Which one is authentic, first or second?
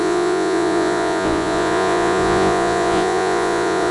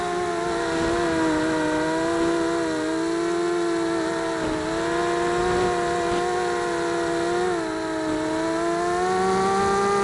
second